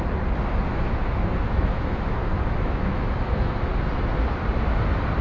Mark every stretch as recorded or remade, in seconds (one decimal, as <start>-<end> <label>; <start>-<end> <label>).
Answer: 0.0-0.7 recorded; 0.7-3.7 remade; 3.7-5.2 recorded